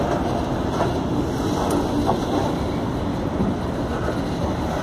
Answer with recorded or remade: recorded